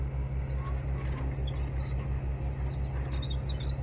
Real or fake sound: real